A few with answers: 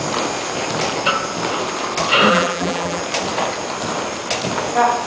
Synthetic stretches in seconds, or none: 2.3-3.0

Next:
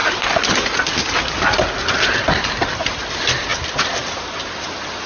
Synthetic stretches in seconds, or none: 0.0-1.0; 3.5-4.6

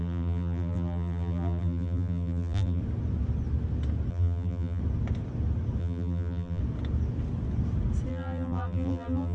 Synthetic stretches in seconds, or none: 0.0-2.8; 4.1-4.8; 5.8-6.6; 8.1-9.3

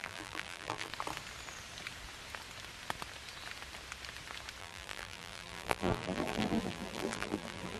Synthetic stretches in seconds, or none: 0.0-0.9; 4.6-7.8

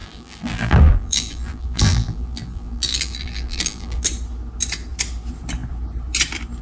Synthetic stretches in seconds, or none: 0.0-4.0

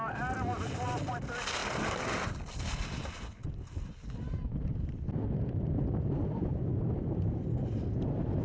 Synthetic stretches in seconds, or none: 1.6-6.6

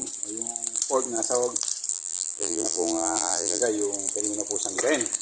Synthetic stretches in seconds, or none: 1.9-3.6